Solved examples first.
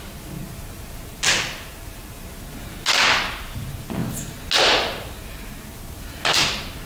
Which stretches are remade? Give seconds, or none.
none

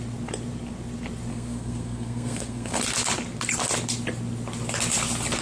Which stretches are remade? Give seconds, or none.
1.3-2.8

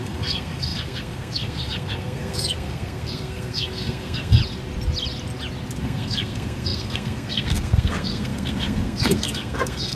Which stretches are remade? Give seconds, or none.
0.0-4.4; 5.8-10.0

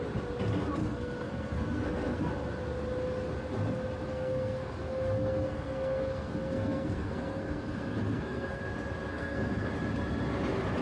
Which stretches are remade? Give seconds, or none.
0.8-2.3; 4.1-8.6; 9.1-9.7

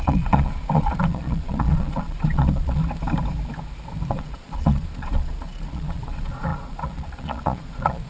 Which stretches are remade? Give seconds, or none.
0.0-2.8; 4.1-8.1

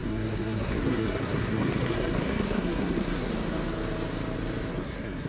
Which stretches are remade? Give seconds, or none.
0.0-3.3; 4.7-5.3

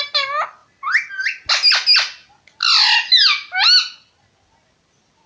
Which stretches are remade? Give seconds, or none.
none

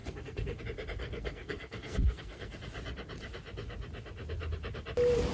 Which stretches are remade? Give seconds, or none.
0.0-0.6; 1.0-2.6